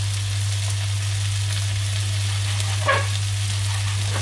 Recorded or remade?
recorded